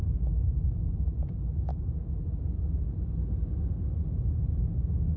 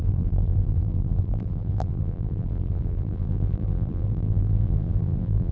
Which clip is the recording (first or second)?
first